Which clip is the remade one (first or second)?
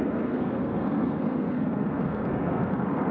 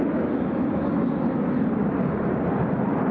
first